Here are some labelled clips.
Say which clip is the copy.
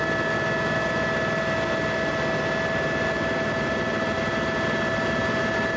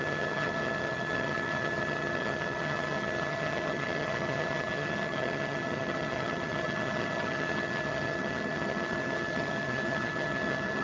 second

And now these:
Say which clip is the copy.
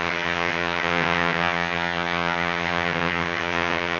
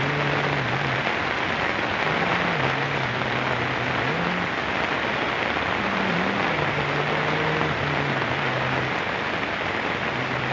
first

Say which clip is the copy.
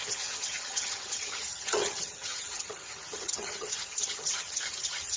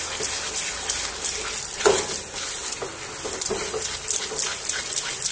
first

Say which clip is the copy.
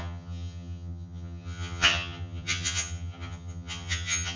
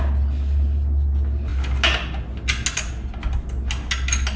first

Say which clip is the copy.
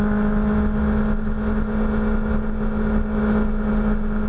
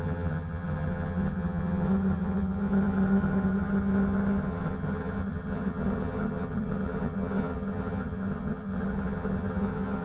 second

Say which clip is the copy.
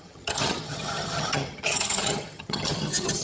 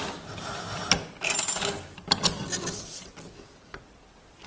first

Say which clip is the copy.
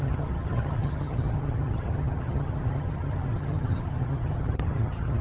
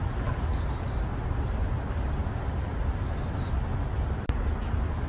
first